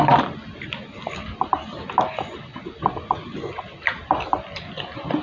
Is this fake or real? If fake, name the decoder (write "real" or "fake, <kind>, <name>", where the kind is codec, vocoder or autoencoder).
real